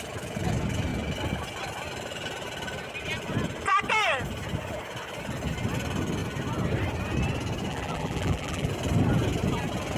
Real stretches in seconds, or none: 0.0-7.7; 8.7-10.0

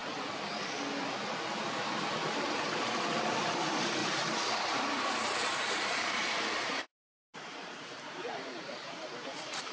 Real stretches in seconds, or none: 0.0-1.7; 4.0-5.5

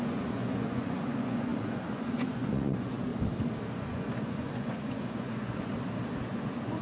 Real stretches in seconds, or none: 3.1-3.8; 5.7-6.3

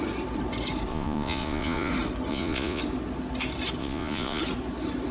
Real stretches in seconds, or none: 0.0-0.9; 1.9-2.3; 2.8-3.8; 4.4-5.1

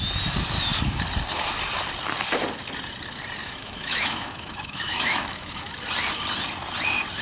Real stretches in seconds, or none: 0.0-3.4; 5.7-7.2